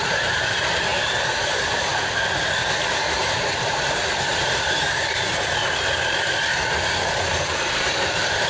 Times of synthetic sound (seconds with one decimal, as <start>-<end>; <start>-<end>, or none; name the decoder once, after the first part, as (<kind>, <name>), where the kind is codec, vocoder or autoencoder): 0.0-1.9 (vocoder, BigVGAN v2); 3.2-5.3; 7.6-8.5